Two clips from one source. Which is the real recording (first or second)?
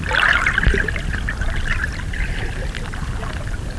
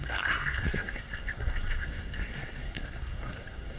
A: first